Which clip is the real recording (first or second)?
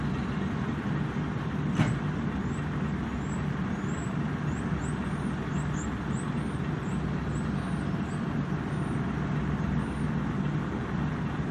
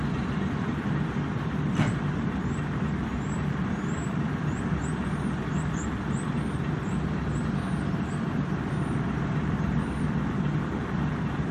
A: first